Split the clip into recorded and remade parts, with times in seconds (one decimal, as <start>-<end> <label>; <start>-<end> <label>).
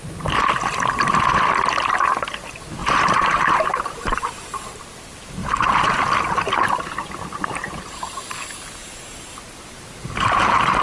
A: 0.0-2.8 recorded; 2.8-4.8 remade; 4.8-8.8 recorded; 8.8-10.8 remade